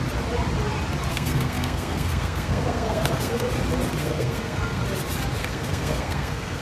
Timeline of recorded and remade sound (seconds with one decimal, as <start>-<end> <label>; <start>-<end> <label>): 0.0-1.1 recorded; 1.1-3.5 remade; 3.5-4.0 recorded; 4.0-4.8 remade; 4.8-5.4 recorded; 5.4-6.6 remade